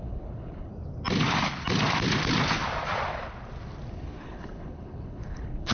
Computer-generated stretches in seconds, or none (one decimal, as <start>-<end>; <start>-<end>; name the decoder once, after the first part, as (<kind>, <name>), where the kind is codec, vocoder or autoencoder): 0.0-0.7 (codec, HILCodec); 3.9-5.7